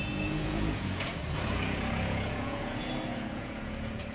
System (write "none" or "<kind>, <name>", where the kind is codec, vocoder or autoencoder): vocoder, Vocos